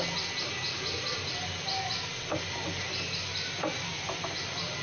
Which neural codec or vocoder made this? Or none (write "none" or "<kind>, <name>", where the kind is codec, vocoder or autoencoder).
none